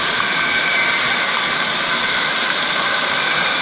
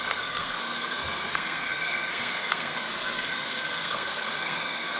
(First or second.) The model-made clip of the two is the second